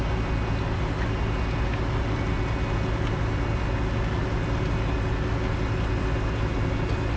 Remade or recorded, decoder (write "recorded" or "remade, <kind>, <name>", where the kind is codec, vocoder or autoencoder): recorded